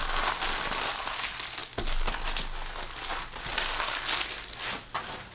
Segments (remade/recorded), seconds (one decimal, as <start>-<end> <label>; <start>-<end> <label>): 0.0-5.3 recorded